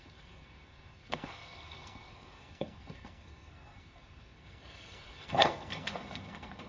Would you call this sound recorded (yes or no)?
no